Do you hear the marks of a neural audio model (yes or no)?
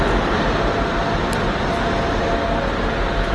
no